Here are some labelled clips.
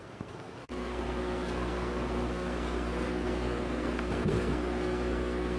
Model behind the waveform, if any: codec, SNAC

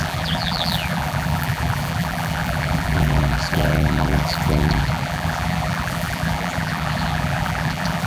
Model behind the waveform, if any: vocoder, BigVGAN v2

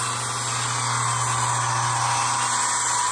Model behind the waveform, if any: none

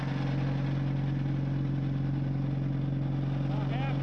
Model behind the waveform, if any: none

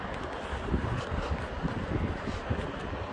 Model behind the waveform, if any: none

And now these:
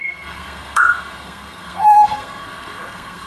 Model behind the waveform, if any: codec, SNAC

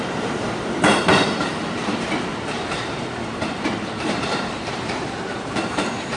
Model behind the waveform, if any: vocoder, BigVGAN v2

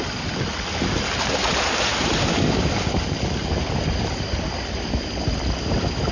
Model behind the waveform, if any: none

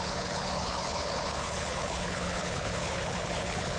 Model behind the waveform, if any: codec, HILCodec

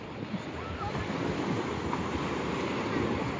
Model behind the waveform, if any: none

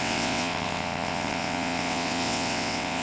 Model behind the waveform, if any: vocoder, WaveNeXt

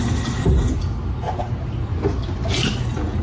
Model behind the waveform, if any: none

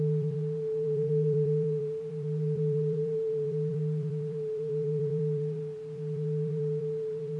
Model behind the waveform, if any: vocoder, BigVGAN v2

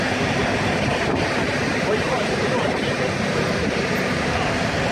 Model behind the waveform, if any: vocoder, BigVGAN v2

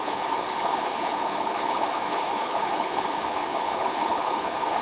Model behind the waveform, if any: codec, HILCodec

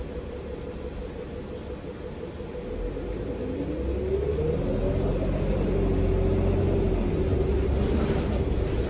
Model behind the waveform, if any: none